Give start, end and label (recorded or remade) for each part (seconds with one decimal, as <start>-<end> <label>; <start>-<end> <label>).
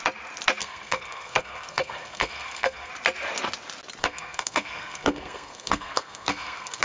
0.0-0.6 recorded; 0.6-2.9 remade; 2.9-4.0 recorded; 4.0-6.8 remade